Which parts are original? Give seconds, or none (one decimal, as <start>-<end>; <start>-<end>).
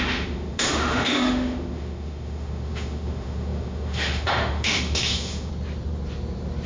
5.5-6.7